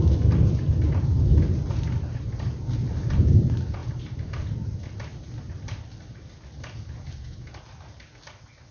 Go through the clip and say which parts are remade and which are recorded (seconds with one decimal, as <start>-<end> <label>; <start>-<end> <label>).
0.0-8.7 recorded